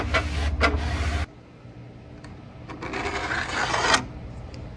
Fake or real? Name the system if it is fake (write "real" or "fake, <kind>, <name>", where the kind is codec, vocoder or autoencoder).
real